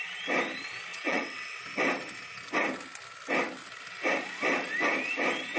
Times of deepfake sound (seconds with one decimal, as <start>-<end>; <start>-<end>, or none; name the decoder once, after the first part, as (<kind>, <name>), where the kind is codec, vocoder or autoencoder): 0.9-1.6 (vocoder, WaveNeXt)

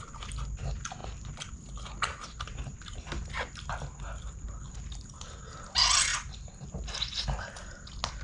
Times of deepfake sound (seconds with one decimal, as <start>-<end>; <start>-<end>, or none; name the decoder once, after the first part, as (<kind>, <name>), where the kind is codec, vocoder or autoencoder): none

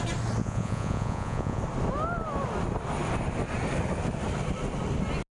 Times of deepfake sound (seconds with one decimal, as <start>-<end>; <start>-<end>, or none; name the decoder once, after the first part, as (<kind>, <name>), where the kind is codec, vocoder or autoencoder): 0.4-1.6 (vocoder, Vocos)